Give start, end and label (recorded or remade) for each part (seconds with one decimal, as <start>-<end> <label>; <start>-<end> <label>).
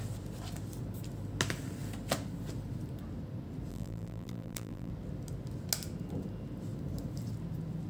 0.0-3.7 recorded; 3.7-4.9 remade; 4.9-7.9 recorded